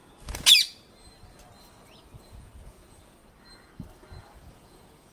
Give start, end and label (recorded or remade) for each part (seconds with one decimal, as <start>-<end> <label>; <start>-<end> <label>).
0.0-2.2 recorded; 2.2-3.2 remade; 3.2-4.2 recorded; 4.2-5.1 remade